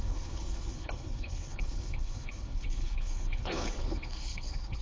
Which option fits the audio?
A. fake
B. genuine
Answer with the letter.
A